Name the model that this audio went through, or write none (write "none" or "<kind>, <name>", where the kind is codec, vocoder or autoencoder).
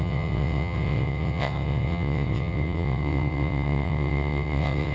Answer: vocoder, WaveNeXt